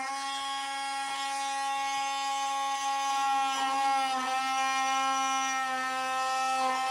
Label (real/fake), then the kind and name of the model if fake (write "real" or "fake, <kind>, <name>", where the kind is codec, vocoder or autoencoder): real